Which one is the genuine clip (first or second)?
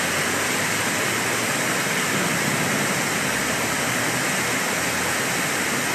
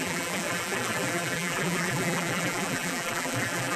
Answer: first